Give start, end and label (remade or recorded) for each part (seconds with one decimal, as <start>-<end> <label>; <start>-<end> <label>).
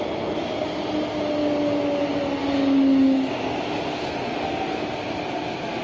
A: 0.0-5.8 recorded